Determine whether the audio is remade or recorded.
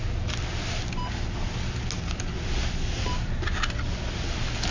recorded